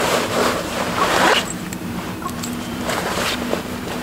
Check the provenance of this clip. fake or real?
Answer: fake